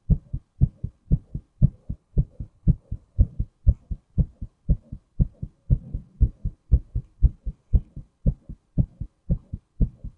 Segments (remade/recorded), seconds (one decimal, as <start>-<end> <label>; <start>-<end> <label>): 0.0-1.8 recorded; 1.8-3.3 remade; 3.3-10.2 recorded